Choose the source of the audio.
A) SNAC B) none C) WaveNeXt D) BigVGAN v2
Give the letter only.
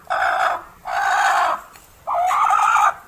B